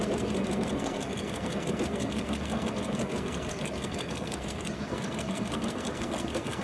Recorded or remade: remade